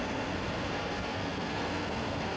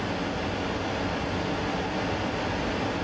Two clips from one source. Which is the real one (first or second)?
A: second